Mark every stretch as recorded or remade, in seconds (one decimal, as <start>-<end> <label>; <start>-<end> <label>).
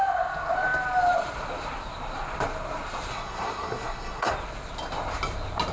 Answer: 0.0-3.1 recorded; 3.1-4.3 remade; 4.3-5.7 recorded